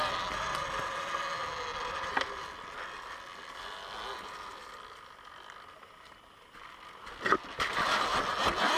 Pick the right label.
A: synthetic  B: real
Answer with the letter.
B